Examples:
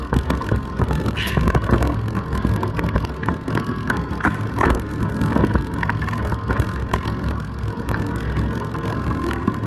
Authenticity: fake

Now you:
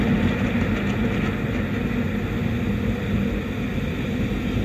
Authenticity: real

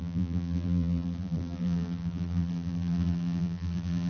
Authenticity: fake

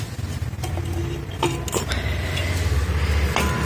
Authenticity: real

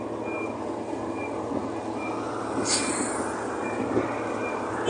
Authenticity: real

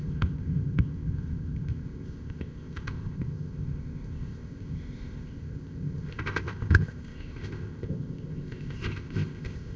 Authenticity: fake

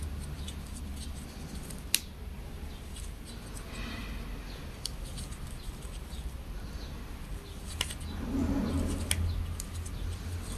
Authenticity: real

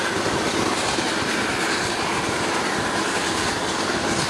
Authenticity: real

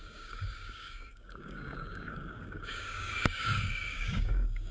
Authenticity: fake